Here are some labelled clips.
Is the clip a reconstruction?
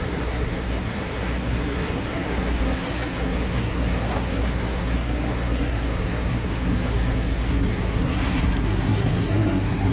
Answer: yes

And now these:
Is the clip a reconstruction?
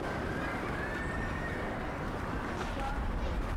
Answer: yes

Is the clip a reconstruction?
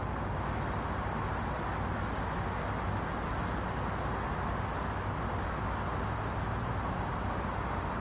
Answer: no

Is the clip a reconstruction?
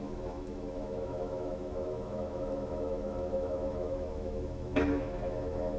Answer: yes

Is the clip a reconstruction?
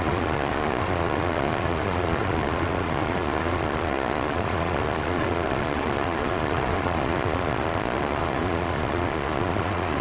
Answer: yes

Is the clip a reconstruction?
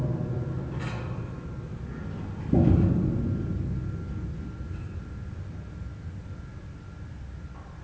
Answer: no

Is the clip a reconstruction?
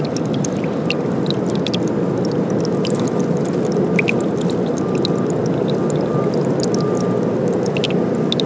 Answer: no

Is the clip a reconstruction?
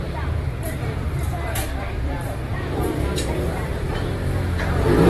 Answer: yes